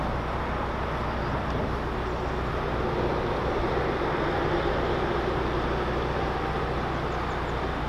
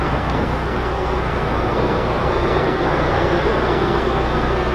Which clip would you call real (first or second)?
first